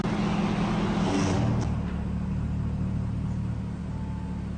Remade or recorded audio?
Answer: recorded